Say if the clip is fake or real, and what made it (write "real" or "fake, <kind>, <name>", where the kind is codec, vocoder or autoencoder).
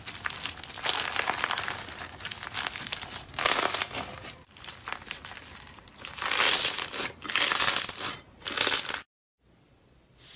real